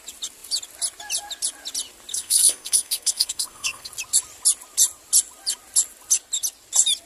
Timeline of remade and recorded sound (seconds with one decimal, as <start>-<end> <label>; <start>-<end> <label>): 0.0-2.1 recorded; 2.1-3.9 remade; 3.9-7.1 recorded